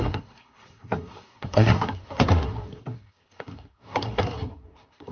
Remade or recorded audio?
remade